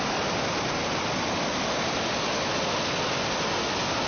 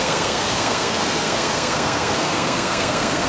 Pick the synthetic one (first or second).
second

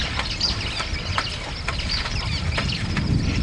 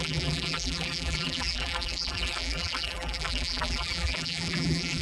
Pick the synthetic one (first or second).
second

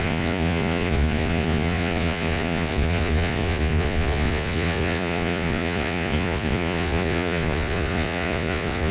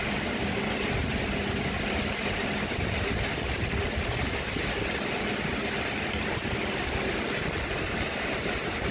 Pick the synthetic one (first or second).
first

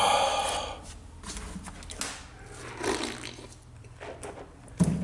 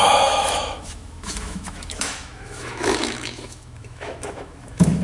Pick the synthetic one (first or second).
second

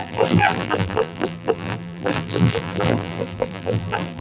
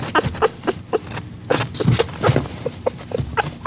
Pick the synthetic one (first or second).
first